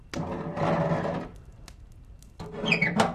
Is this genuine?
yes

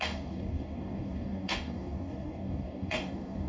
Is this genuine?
no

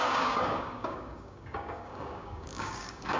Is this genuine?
no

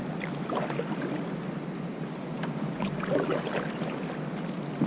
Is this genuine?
yes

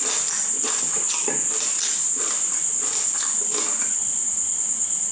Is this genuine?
yes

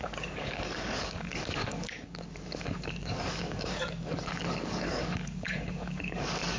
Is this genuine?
no